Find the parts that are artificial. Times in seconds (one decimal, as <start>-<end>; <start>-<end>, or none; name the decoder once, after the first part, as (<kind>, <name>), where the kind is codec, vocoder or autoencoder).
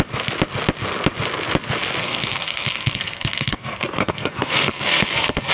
2.0-5.5 (codec, SNAC)